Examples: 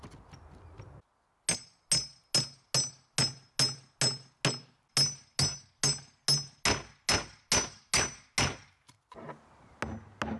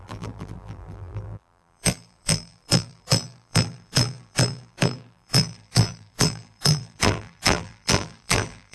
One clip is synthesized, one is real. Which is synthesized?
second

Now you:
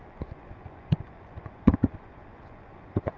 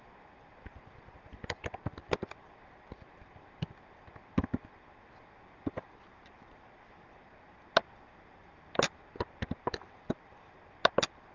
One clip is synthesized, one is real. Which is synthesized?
first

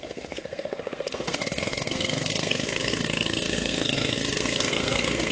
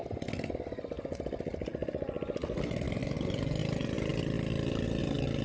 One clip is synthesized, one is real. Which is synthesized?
first